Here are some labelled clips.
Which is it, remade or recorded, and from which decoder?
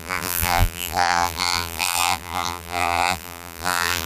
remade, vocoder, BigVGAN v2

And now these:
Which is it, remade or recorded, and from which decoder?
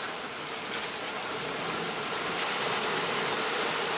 recorded